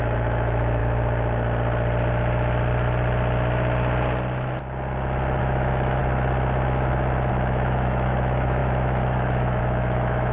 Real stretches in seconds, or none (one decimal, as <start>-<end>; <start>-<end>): 0.8-5.4; 6.0-7.3